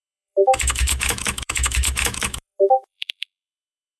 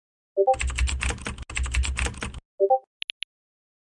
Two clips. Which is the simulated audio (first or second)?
first